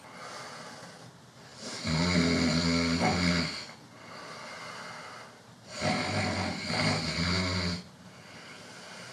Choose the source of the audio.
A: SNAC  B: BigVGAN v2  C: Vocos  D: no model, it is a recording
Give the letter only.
D